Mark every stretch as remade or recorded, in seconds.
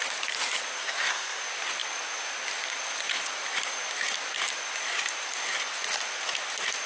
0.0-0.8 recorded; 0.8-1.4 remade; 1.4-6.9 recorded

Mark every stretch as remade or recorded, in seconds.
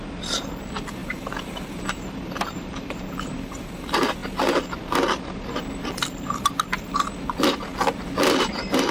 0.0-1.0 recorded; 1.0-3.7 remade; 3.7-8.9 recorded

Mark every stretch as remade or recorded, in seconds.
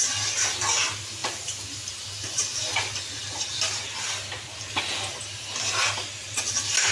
0.0-1.2 recorded; 1.2-2.0 remade; 2.0-6.9 recorded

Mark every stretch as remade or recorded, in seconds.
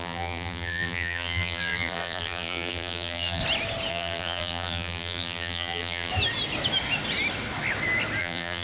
0.0-3.4 remade; 3.4-3.9 recorded; 3.9-6.1 remade; 6.1-8.2 recorded; 8.2-8.6 remade